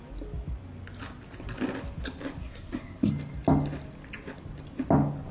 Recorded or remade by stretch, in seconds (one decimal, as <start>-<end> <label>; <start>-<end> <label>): 0.0-2.4 recorded; 2.4-3.1 remade; 3.1-5.3 recorded

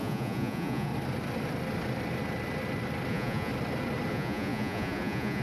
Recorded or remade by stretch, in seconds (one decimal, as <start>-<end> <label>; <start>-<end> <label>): 0.0-0.9 remade; 0.9-3.1 recorded; 3.1-3.5 remade; 3.5-4.1 recorded; 4.1-5.4 remade

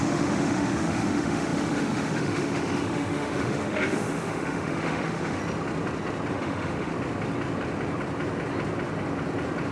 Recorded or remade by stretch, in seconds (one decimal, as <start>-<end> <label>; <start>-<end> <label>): 0.0-5.4 remade; 5.4-6.3 recorded; 6.3-6.9 remade; 6.9-9.7 recorded